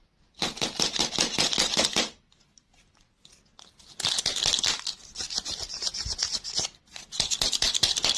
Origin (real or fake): real